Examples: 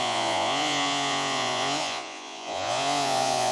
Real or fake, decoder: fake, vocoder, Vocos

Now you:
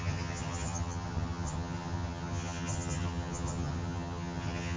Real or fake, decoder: fake, vocoder, HiFi-GAN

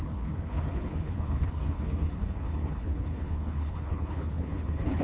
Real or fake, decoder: fake, codec, HILCodec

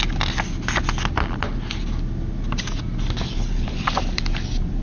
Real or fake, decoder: real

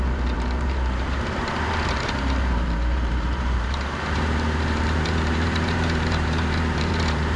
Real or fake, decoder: fake, vocoder, BigVGAN v2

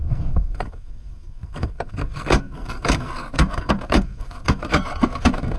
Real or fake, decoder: fake, codec, SNAC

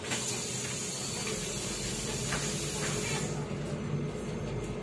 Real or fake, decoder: real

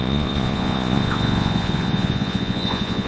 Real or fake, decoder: fake, vocoder, Vocos